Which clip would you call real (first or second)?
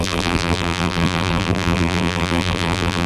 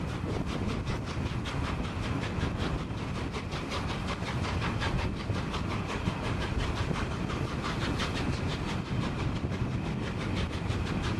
second